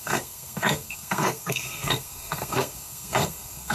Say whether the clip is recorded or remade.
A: remade